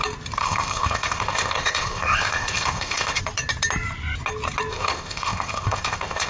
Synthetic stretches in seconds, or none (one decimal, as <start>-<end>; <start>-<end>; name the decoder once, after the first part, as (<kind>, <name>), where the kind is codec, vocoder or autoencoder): 0.4-3.2 (codec, ZipCodec); 4.7-6.3

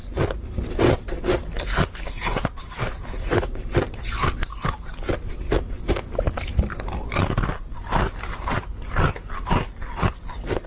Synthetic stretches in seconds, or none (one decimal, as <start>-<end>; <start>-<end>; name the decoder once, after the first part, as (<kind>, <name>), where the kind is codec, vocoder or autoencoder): none